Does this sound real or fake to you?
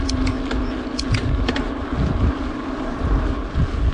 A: real